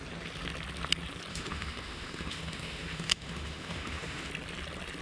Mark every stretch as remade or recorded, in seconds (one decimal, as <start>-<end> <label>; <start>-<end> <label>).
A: 0.0-1.3 recorded; 1.3-4.3 remade; 4.3-5.0 recorded